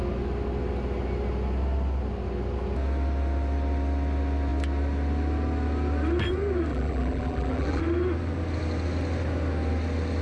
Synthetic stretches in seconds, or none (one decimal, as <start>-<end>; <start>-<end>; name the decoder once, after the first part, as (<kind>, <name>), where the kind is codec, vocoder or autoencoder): 6.7-7.8 (vocoder, BigVGAN v2)

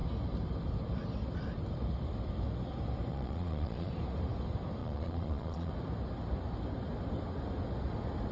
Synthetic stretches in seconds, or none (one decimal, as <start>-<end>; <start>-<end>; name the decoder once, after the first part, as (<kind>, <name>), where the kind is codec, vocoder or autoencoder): 3.1-3.9 (vocoder, Vocos); 4.8-5.7

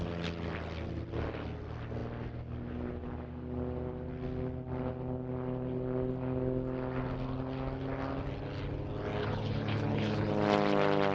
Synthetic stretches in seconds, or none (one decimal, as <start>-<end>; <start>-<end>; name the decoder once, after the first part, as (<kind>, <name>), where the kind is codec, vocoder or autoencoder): 9.2-10.3 (codec, HILCodec)

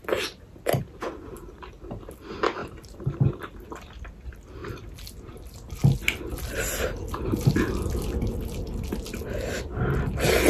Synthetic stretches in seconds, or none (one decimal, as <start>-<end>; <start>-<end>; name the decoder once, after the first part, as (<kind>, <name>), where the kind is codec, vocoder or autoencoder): 2.6-3.3 (vocoder, BigVGAN v2)

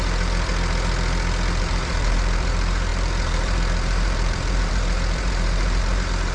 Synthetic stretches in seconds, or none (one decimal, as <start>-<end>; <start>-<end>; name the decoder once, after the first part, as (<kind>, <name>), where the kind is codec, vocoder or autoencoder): 0.0-0.5 (vocoder, BigVGAN v2); 1.6-6.3

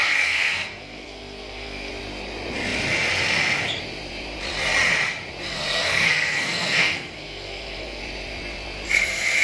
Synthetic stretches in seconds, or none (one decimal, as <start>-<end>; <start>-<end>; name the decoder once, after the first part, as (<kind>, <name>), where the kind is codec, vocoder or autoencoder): 0.0-1.9 (codec, SNAC); 5.5-8.0

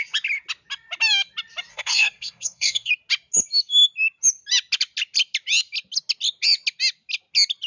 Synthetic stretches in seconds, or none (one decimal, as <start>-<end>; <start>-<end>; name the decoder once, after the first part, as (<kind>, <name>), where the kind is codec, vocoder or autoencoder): 1.7-2.9 (codec, SNAC)

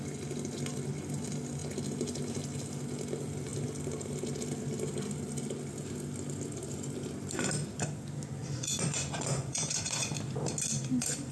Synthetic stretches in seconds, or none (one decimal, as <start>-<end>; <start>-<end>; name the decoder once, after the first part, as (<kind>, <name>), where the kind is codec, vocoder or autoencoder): 8.4-10.1 (vocoder, Vocos)